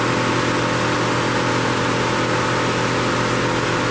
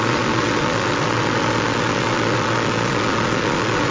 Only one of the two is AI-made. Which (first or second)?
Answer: second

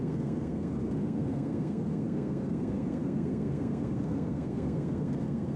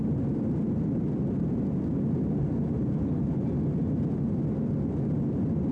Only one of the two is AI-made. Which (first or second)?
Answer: first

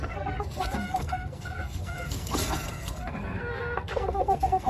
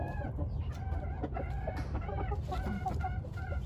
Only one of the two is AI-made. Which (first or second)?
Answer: first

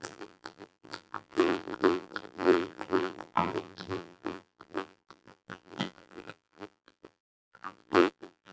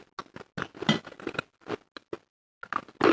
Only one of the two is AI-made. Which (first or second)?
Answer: first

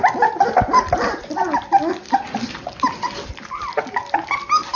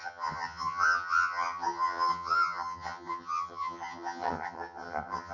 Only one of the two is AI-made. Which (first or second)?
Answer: second